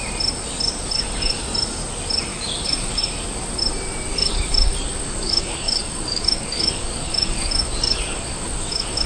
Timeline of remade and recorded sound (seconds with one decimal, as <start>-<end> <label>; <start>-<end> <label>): 0.0-2.3 recorded; 2.3-3.0 remade; 3.0-4.1 recorded; 4.1-9.1 remade